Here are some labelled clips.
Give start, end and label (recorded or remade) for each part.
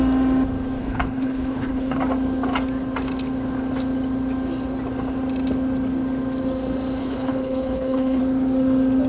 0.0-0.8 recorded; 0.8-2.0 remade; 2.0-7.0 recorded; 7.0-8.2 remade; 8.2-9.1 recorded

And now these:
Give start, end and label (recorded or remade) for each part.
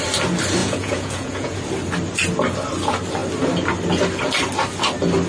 0.0-0.6 recorded; 0.6-1.6 remade; 1.6-5.3 recorded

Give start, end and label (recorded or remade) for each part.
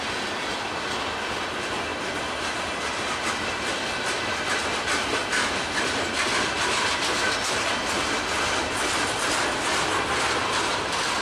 0.0-11.2 recorded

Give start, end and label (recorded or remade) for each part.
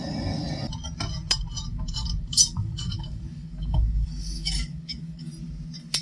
0.0-1.7 recorded; 1.7-5.3 remade; 5.3-6.0 recorded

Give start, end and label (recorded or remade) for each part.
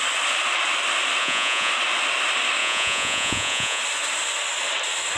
0.0-1.2 recorded; 1.2-1.7 remade; 1.7-2.6 recorded; 2.6-3.8 remade; 3.8-5.2 recorded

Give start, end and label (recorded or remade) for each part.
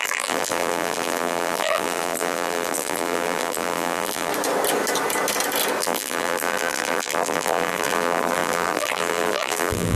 0.0-4.3 remade; 4.3-5.8 recorded; 5.8-10.0 remade